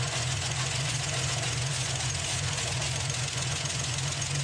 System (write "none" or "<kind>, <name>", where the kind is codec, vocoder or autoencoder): vocoder, Vocos